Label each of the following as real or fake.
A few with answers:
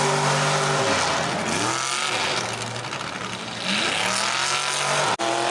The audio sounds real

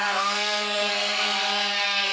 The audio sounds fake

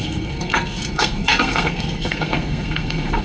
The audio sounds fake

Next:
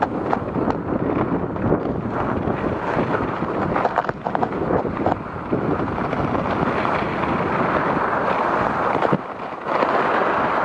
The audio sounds real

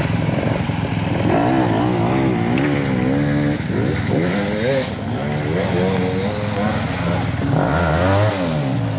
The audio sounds real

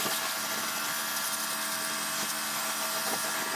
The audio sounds real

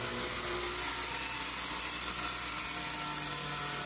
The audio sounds real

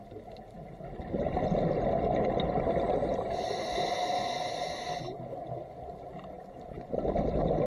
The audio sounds real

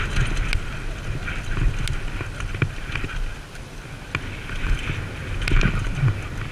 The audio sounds real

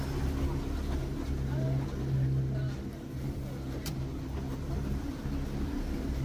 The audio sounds real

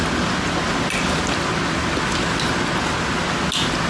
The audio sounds real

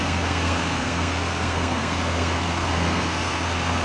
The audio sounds fake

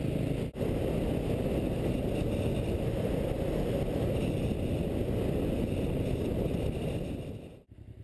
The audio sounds real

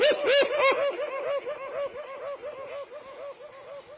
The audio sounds real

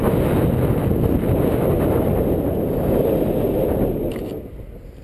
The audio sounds real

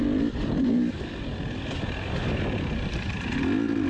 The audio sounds real